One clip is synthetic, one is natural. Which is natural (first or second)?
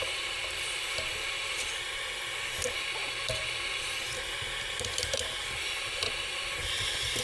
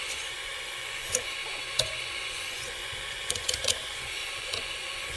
first